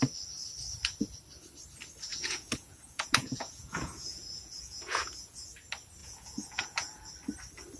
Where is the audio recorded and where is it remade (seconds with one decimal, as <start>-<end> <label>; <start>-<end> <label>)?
0.0-2.1 recorded; 2.1-5.5 remade; 5.5-6.0 recorded; 6.0-7.1 remade; 7.1-7.8 recorded